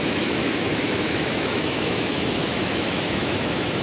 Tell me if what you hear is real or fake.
fake